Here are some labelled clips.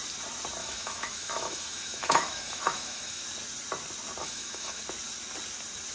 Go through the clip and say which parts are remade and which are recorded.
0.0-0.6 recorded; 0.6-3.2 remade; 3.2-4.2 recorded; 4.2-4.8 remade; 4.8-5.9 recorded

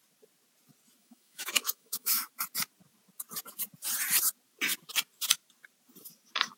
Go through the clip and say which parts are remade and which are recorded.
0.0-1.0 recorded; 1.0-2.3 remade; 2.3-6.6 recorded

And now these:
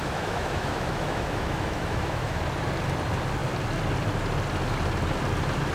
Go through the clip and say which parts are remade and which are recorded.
0.0-2.4 remade; 2.4-5.7 recorded